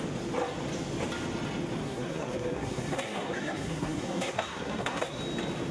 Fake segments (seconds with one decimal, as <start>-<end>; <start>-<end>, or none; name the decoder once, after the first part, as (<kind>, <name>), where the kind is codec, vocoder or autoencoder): 1.8-5.2 (codec, SNAC)